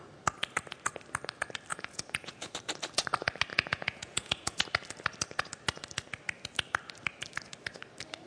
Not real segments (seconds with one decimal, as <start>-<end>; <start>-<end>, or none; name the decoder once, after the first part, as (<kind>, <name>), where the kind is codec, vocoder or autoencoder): 1.7-2.5 (vocoder, Vocos); 3.5-4.6